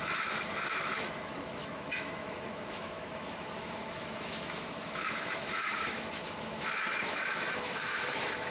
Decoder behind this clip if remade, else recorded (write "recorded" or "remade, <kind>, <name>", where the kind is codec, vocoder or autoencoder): remade, autoencoder, DAC-VAE